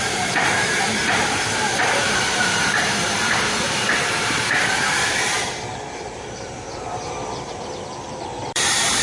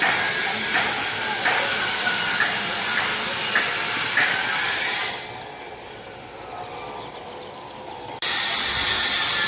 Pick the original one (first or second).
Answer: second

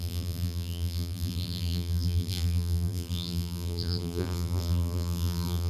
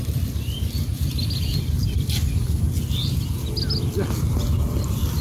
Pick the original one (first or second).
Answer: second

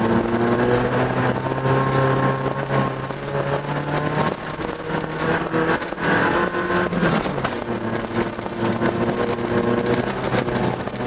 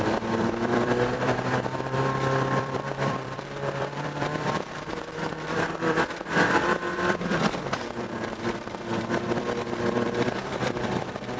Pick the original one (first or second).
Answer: first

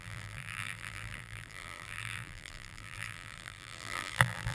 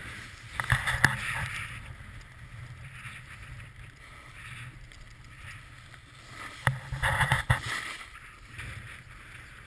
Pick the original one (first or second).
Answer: second